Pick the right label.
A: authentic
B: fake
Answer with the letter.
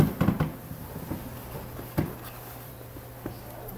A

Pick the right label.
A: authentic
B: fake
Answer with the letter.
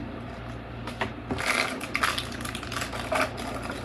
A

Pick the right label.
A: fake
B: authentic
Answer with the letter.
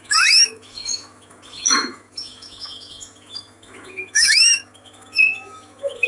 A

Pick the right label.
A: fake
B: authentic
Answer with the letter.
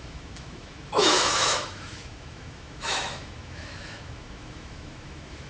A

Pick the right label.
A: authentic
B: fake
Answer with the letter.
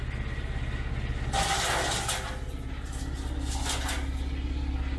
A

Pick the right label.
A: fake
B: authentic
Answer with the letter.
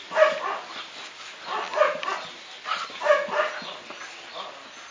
B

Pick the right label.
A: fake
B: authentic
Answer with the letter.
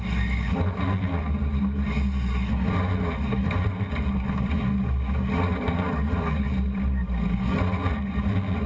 B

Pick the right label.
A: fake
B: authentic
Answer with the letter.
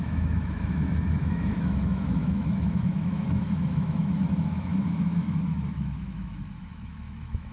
A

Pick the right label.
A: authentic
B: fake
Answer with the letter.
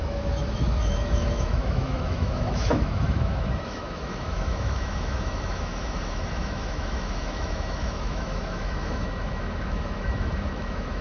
B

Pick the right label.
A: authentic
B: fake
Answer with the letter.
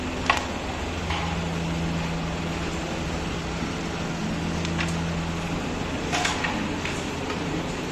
A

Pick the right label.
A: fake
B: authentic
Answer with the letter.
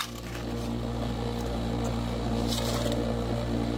B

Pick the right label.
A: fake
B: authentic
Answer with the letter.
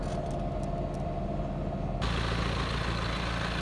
B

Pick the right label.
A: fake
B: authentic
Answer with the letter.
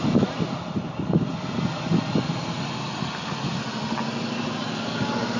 B